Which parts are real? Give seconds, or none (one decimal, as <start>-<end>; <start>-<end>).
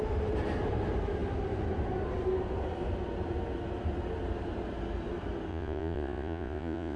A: 0.0-5.5